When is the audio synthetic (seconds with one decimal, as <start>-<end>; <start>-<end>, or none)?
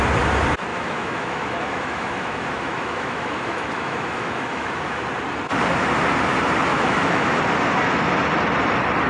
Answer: 0.7-5.0; 6.7-7.4